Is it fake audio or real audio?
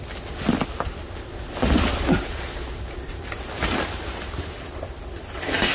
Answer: real